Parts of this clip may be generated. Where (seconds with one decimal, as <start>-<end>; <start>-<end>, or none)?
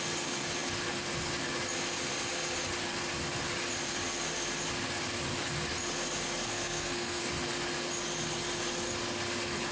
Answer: 6.5-7.2